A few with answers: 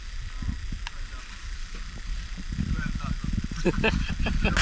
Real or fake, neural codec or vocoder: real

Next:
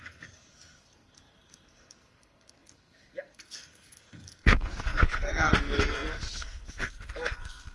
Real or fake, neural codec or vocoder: fake, codec, SNAC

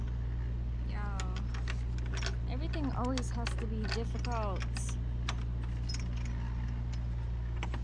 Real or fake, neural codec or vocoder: real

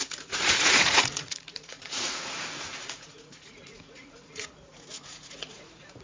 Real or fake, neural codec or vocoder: fake, vocoder, Vocos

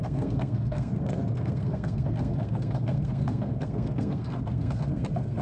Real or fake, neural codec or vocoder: fake, codec, SNAC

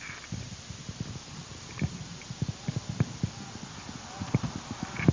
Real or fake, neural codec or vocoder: real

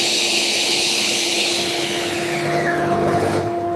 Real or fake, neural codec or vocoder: fake, codec, HILCodec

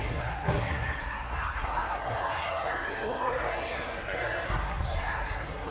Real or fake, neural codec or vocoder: fake, codec, SNAC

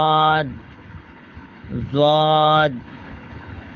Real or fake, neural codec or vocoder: fake, codec, HILCodec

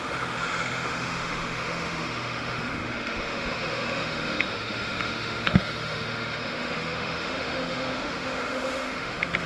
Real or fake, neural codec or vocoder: fake, autoencoder, DAC-VAE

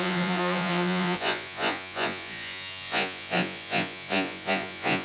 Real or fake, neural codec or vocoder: fake, vocoder, Vocos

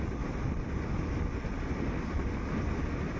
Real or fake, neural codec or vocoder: real